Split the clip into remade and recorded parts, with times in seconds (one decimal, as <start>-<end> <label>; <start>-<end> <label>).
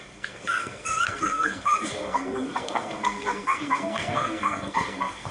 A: 0.0-5.3 remade